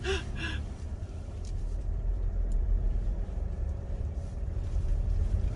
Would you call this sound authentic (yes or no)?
no